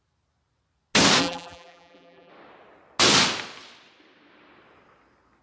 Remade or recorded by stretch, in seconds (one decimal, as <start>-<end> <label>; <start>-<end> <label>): 0.0-1.2 recorded; 1.2-2.3 remade; 2.3-5.4 recorded